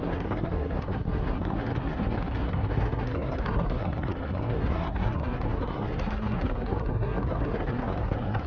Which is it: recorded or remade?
remade